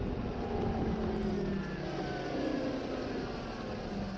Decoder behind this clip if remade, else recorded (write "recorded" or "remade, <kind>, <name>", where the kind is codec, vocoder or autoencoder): recorded